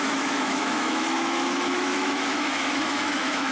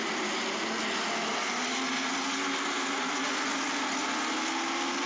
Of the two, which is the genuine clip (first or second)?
second